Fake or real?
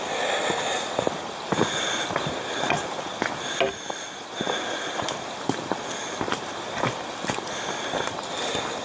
real